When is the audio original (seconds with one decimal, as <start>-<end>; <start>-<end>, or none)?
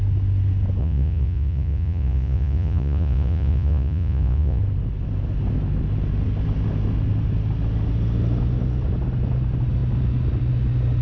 0.0-0.8; 4.6-11.0